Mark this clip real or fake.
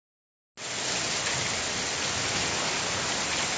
real